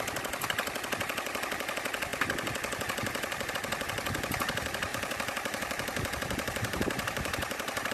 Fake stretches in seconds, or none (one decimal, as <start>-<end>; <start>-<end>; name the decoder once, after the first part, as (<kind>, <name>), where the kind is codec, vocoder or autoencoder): 4.9-7.9 (vocoder, BigVGAN v2)